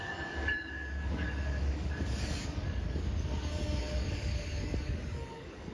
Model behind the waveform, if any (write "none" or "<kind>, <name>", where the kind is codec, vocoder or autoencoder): codec, DAC